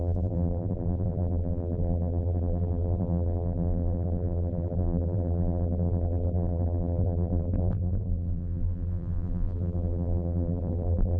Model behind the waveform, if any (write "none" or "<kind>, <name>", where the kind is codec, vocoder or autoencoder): vocoder, BigVGAN v2